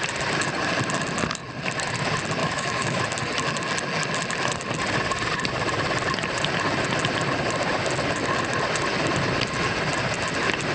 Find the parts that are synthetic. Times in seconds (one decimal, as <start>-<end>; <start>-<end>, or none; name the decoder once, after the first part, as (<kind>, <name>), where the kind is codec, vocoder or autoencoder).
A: 2.4-3.0 (autoencoder, DAC-VAE)